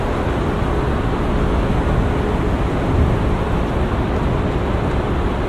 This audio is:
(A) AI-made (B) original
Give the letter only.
B